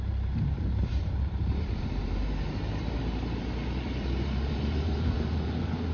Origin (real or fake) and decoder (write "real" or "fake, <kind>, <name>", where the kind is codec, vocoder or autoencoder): fake, vocoder, BigVGAN v2